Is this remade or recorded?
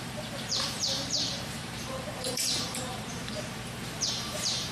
remade